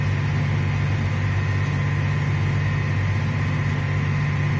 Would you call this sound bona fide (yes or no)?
yes